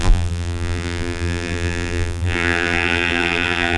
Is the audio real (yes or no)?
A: no